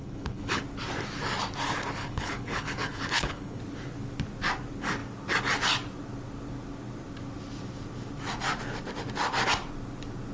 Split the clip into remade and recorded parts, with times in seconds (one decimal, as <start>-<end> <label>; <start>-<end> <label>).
0.0-0.6 remade; 0.6-2.0 recorded; 2.0-3.6 remade; 3.6-10.3 recorded